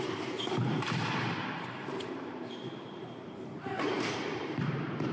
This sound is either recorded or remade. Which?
remade